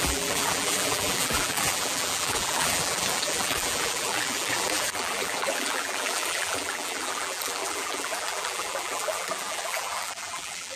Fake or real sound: fake